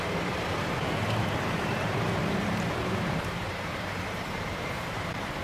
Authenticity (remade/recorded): remade